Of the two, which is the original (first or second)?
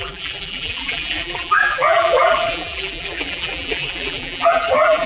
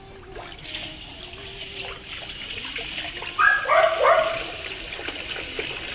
second